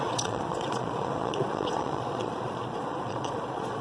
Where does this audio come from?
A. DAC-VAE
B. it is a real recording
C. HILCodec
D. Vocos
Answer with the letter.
D